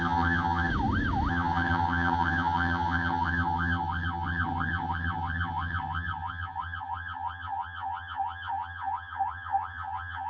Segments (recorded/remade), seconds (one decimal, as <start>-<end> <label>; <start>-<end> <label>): 0.0-0.7 remade; 0.7-1.3 recorded; 1.3-10.3 remade